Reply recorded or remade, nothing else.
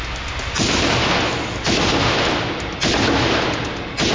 recorded